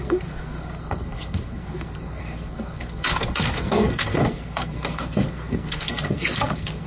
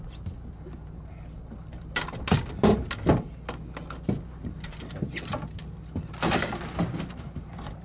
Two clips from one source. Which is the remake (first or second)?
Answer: first